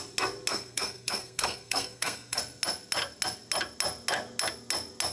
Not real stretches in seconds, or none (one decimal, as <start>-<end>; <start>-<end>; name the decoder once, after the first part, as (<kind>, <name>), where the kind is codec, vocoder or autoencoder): 0.5-2.4 (codec, SNAC)

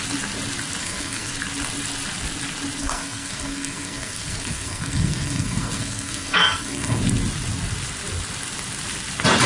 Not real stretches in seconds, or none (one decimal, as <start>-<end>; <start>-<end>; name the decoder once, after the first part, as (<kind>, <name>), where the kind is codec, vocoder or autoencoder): 0.8-1.3 (codec, SNAC); 2.8-7.0

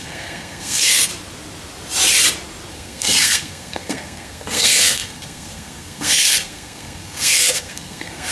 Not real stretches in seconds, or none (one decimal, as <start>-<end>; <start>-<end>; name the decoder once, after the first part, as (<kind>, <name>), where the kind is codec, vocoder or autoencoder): 0.0-1.1 (codec, SNAC); 2.7-8.3

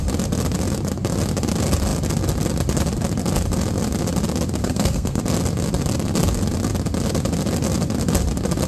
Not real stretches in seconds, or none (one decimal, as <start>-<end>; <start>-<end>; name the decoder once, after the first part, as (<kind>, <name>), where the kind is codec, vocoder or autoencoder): 4.6-5.2 (codec, SNAC)

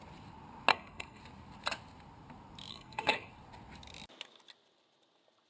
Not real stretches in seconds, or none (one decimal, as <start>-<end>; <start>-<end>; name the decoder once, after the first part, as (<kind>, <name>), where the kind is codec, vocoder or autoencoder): 0.7-1.2 (codec, SNAC); 2.7-3.3

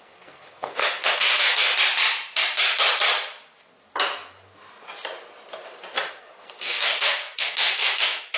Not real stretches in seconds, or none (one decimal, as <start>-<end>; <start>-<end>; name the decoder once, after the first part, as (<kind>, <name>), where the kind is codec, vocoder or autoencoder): 0.0-1.7 (codec, SNAC); 6.1-8.4

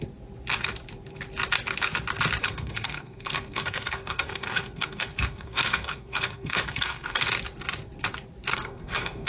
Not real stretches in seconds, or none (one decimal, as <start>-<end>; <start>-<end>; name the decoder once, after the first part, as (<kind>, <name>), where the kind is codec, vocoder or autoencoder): 2.4-7.2 (codec, SNAC); 8.5-9.3